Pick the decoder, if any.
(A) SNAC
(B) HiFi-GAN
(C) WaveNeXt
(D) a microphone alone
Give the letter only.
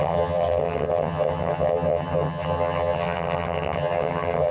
B